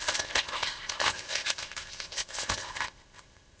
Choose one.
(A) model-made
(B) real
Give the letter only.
A